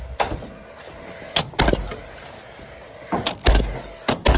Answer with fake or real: real